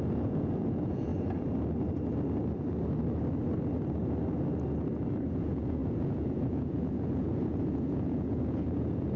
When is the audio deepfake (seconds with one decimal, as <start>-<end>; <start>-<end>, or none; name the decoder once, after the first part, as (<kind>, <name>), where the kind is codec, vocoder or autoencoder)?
0.0-1.1 (vocoder, Vocos); 5.3-9.2